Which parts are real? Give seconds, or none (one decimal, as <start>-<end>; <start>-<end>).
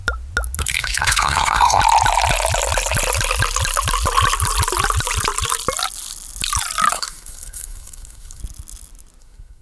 0.0-0.6; 1.8-6.9; 8.4-9.2